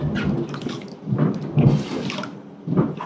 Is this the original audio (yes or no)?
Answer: yes